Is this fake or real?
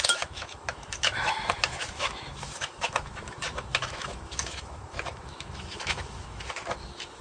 fake